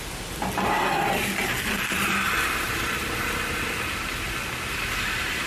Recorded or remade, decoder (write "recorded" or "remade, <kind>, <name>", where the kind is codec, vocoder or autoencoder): recorded